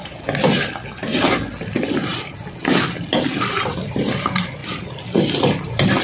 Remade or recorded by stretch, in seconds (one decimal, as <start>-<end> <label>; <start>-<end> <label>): 0.0-4.6 recorded; 4.6-6.0 remade